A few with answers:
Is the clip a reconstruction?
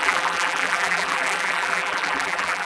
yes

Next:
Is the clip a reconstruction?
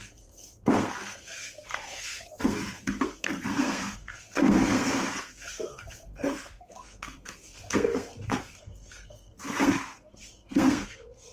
yes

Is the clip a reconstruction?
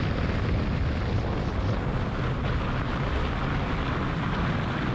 no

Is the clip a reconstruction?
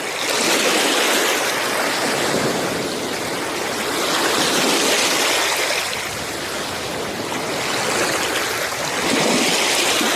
no